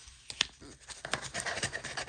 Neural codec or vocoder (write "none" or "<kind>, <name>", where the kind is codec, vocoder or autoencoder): none